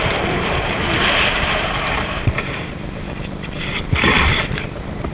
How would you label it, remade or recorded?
remade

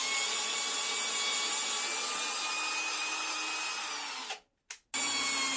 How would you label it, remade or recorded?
recorded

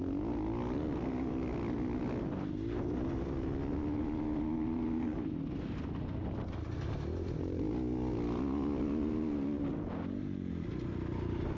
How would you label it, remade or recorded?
recorded